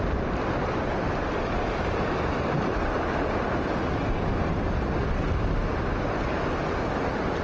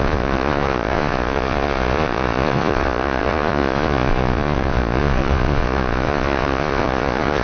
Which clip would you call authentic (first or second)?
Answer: first